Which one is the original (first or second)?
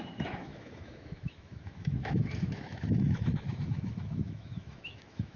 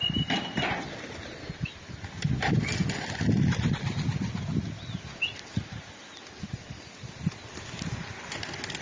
second